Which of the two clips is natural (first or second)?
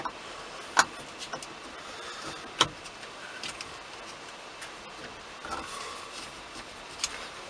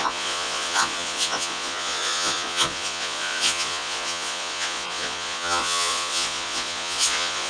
first